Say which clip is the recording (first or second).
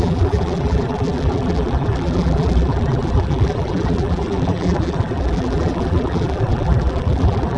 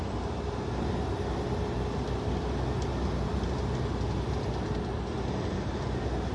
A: second